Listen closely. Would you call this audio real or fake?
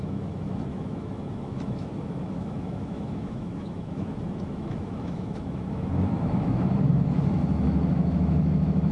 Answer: fake